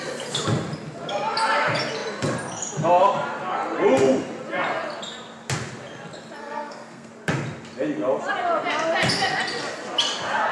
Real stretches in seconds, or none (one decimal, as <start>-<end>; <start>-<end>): 0.0-6.4; 7.1-10.5